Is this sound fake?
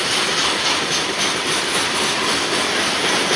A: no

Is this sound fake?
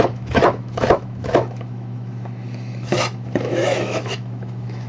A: yes